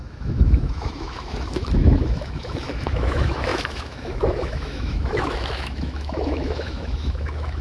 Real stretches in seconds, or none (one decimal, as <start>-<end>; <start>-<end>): none